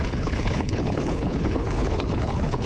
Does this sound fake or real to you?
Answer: fake